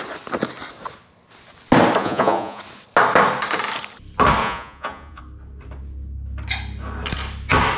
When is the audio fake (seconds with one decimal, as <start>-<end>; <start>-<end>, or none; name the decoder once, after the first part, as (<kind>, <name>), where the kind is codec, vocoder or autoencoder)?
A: 2.0-2.6 (vocoder, Vocos); 4.4-5.2

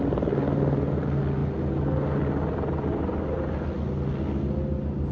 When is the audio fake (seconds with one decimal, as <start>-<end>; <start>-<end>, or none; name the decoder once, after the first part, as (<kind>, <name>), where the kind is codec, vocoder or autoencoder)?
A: none

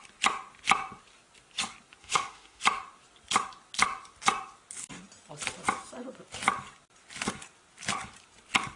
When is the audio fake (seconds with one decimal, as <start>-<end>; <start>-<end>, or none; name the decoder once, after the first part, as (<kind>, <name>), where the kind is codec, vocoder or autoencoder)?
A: 2.0-2.6 (autoencoder, DAC-VAE)

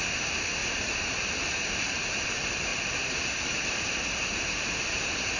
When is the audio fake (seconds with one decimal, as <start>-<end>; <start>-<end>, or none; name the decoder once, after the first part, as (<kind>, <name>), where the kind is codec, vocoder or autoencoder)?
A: 0.0-2.7 (vocoder, BigVGAN v2); 3.4-5.4

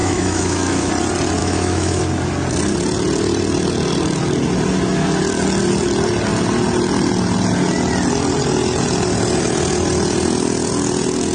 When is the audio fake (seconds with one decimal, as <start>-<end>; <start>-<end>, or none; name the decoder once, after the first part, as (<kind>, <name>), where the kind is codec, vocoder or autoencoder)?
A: 0.0-0.9 (autoencoder, DAC-VAE); 1.4-2.0